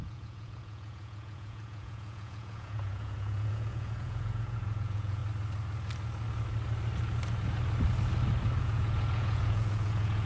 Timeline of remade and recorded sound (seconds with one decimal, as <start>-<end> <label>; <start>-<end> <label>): 0.0-5.2 remade; 5.2-8.6 recorded; 8.6-10.3 remade